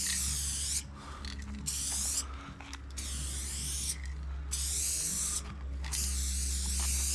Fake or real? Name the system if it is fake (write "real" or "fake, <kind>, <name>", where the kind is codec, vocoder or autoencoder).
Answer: real